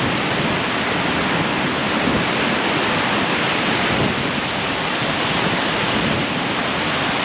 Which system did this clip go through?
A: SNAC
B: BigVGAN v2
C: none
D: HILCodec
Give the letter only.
C